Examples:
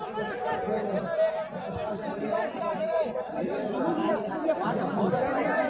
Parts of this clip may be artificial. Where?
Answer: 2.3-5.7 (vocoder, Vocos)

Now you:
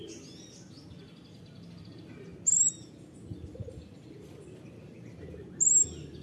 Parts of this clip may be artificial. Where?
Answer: none

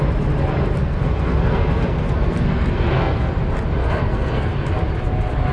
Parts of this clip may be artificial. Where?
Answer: 0.8-3.3 (codec, SNAC); 3.8-4.5

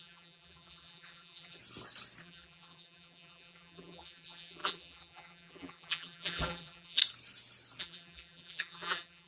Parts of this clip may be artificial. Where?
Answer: 0.0-1.6 (vocoder, BigVGAN v2); 2.2-7.0; 7.8-9.3

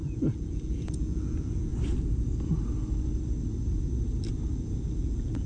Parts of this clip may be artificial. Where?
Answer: 0.0-1.7 (vocoder, Vocos); 5.0-5.5